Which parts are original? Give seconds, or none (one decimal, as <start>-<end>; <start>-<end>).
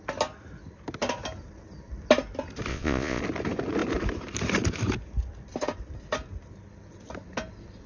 0.0-2.7; 3.2-7.9